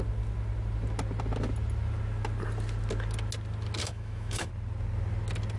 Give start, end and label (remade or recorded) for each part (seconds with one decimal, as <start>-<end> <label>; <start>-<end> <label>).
0.0-3.8 recorded; 3.8-4.5 remade; 4.5-5.6 recorded